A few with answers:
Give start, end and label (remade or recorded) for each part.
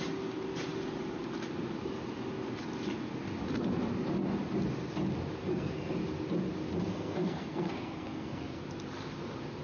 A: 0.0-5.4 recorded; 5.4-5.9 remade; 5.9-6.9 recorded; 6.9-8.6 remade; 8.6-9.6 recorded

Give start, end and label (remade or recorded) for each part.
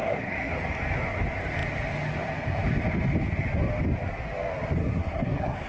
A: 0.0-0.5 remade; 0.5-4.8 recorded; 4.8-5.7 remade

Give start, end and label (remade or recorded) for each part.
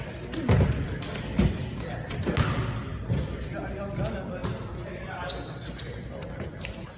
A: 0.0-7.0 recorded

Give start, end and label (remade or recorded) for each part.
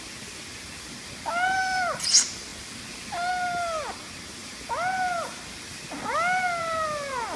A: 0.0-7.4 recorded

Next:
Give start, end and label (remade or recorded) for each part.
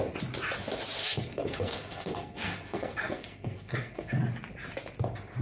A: 0.0-1.0 recorded; 1.0-4.2 remade; 4.2-5.4 recorded